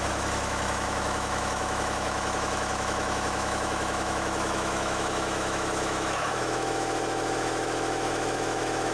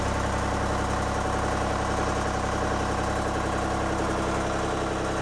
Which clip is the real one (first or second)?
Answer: second